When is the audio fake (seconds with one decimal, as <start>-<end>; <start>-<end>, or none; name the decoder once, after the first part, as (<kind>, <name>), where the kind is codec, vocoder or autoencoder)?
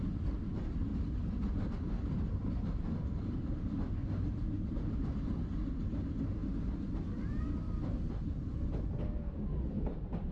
0.0-4.0 (vocoder, BigVGAN v2); 5.2-6.4; 7.2-10.3